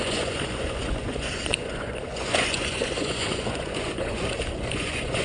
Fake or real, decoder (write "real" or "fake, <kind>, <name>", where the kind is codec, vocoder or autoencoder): fake, vocoder, Vocos